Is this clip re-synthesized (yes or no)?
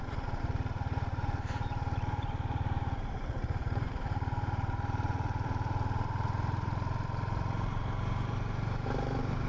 yes